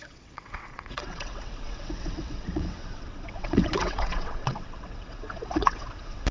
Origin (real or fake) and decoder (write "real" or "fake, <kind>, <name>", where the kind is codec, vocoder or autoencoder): fake, vocoder, WaveNeXt